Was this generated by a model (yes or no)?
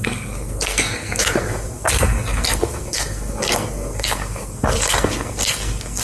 yes